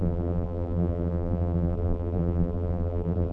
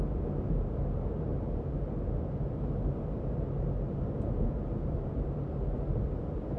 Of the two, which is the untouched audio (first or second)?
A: second